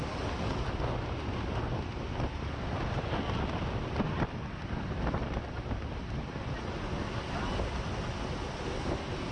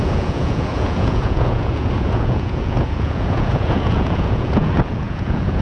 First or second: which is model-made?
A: second